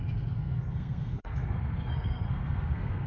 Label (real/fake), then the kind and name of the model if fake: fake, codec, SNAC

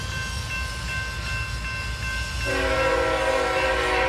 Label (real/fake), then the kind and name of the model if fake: real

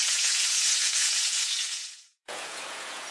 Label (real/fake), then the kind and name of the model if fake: fake, vocoder, Vocos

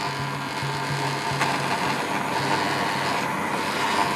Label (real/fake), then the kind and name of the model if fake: real